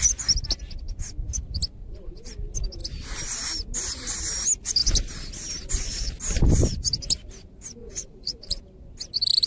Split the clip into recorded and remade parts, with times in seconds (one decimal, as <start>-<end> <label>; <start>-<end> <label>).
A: 0.0-1.8 recorded; 1.8-2.3 remade; 2.3-7.8 recorded; 7.8-8.6 remade; 8.6-9.5 recorded